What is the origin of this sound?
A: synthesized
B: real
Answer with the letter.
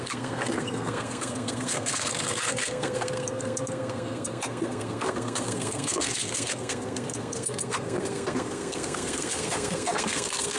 A